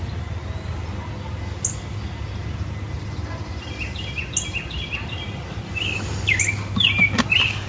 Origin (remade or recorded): recorded